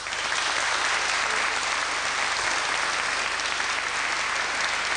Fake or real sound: real